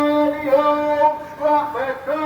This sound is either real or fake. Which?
real